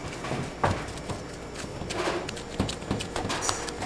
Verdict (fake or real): real